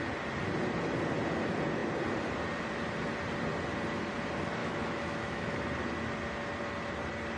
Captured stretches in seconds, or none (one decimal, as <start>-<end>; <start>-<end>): 0.0-4.6; 5.6-7.4